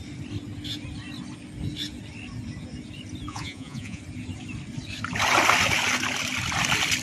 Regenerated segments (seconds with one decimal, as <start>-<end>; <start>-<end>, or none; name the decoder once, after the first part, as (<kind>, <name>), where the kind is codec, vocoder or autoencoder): 3.3-4.0 (vocoder, Vocos)